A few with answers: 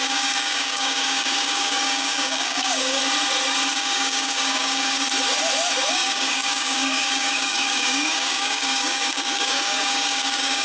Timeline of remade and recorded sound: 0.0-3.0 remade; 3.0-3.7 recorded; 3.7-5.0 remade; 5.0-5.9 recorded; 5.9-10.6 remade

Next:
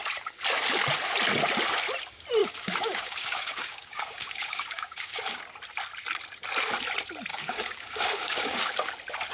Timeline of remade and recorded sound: 0.0-2.4 recorded; 2.4-5.4 remade; 5.4-7.3 recorded; 7.3-8.9 remade; 8.9-9.3 recorded

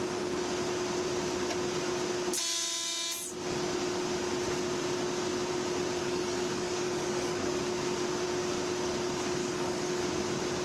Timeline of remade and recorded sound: 0.0-6.0 recorded; 6.0-7.6 remade; 7.6-9.4 recorded; 9.4-10.0 remade; 10.0-10.6 recorded

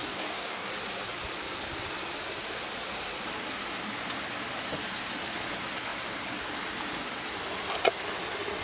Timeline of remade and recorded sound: 0.0-0.7 remade; 0.7-8.6 recorded

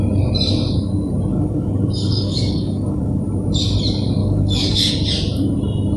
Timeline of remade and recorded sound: 0.0-1.3 recorded; 1.3-3.2 remade; 3.2-4.2 recorded; 4.2-4.9 remade; 4.9-6.0 recorded

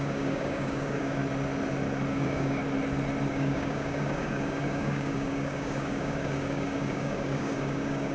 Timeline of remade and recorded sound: 0.0-1.2 remade; 1.2-2.1 recorded; 2.1-2.6 remade; 2.6-3.3 recorded; 3.3-8.1 remade

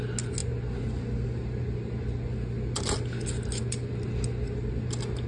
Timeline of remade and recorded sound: 0.0-5.3 recorded

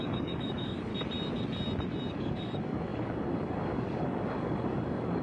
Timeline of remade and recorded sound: 0.0-0.9 remade; 0.9-2.1 recorded; 2.1-5.2 remade